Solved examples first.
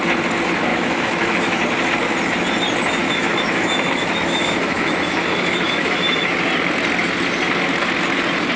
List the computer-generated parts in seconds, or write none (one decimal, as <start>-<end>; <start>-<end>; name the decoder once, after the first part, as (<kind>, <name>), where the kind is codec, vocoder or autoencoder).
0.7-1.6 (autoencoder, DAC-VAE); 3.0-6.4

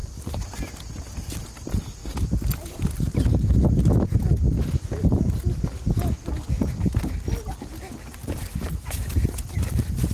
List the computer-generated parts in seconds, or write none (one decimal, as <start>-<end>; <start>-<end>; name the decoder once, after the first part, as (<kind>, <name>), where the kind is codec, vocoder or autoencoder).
0.0-0.6 (vocoder, BigVGAN v2); 8.2-9.4

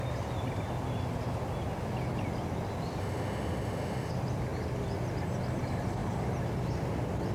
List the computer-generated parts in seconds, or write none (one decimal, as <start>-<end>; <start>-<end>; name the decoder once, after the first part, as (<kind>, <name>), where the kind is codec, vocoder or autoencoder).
3.0-4.1 (autoencoder, DAC-VAE)

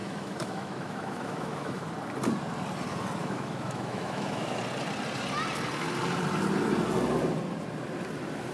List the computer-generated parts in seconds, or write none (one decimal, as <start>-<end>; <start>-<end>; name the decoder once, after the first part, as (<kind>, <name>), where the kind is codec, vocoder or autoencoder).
0.0-1.9 (autoencoder, DAC-VAE); 3.2-4.6

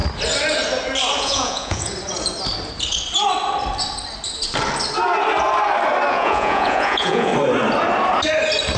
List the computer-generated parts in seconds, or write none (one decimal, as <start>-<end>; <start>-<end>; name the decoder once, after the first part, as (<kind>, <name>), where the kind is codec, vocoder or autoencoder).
1.2-1.9 (vocoder, Vocos); 6.1-7.3

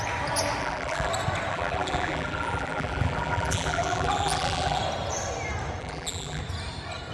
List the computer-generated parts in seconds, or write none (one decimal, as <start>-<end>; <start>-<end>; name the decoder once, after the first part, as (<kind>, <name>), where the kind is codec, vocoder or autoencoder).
0.6-1.1 (vocoder, BigVGAN v2); 1.5-4.8; 5.8-6.4

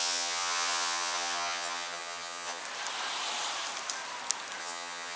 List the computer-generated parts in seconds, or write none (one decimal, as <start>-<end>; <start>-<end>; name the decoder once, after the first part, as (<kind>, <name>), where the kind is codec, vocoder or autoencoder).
0.0-2.6 (vocoder, HiFi-GAN); 4.6-5.2